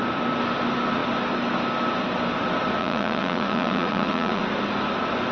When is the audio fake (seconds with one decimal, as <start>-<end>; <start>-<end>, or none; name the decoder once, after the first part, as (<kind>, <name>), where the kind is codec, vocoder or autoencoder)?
2.8-4.4 (vocoder, Vocos)